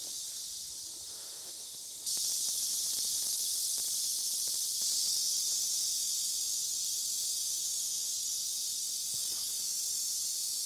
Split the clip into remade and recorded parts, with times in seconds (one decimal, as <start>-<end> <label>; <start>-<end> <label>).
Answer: 0.0-1.1 recorded; 1.1-1.8 remade; 1.8-7.4 recorded; 7.4-8.1 remade; 8.1-10.7 recorded